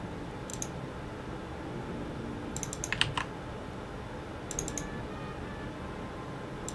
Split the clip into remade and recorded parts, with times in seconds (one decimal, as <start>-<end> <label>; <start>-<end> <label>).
0.0-6.7 recorded